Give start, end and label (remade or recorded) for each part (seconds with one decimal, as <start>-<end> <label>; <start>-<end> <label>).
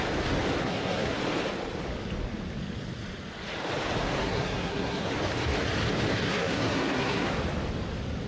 0.0-0.6 recorded; 0.6-1.2 remade; 1.2-4.2 recorded; 4.2-5.1 remade; 5.1-6.1 recorded; 6.1-7.3 remade; 7.3-8.3 recorded